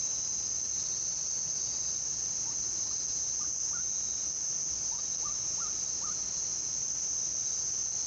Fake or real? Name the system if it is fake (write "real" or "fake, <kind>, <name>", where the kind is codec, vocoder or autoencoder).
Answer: real